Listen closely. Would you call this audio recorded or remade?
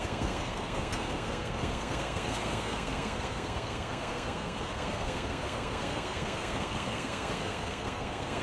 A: remade